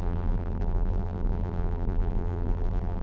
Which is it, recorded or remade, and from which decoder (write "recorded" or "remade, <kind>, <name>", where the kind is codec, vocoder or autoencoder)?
remade, vocoder, BigVGAN v2